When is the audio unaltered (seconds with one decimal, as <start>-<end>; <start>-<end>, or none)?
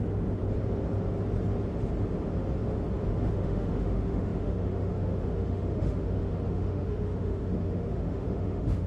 0.4-3.3